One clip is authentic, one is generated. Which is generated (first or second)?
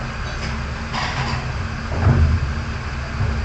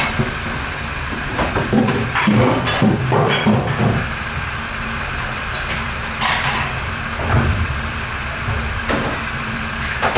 second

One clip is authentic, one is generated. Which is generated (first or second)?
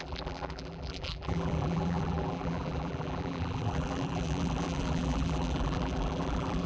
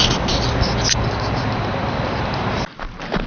first